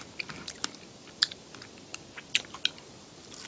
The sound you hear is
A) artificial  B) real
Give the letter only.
B